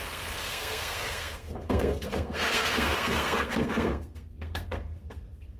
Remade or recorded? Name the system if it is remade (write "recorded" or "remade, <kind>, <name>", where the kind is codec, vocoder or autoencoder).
remade, codec, SNAC